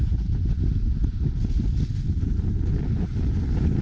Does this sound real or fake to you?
real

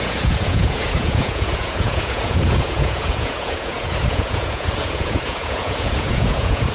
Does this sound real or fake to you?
fake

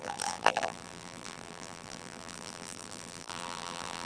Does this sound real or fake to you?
fake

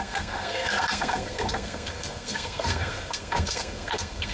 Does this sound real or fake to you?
fake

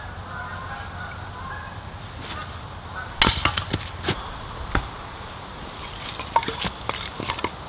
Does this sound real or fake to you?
real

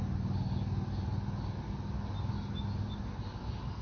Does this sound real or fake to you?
real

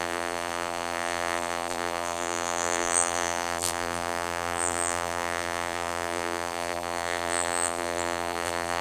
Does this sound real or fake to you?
fake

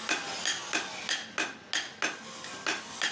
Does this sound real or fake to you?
real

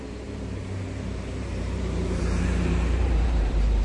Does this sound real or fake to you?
fake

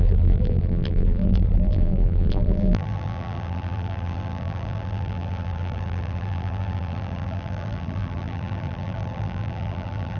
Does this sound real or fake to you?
fake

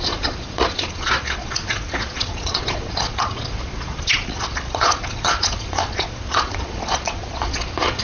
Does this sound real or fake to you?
fake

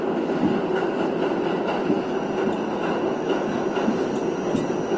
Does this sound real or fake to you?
real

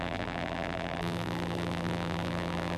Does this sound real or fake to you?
fake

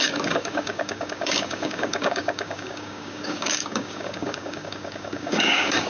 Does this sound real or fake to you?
fake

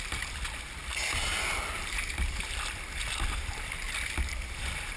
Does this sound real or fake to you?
real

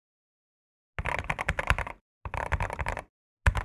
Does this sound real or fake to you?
real